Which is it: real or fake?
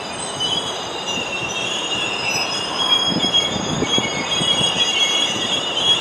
fake